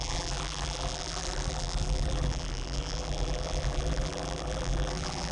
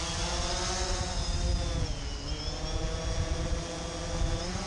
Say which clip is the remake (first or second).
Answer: first